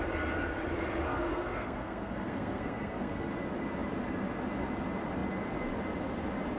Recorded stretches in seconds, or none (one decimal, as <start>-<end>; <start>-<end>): 0.0-1.1; 3.3-6.6